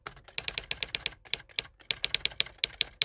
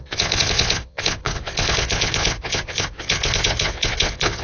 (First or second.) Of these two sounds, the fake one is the second